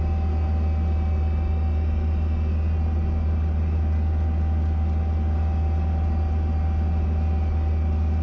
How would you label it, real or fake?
real